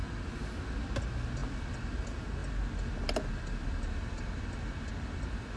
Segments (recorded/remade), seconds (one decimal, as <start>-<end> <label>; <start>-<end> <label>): 0.0-5.6 recorded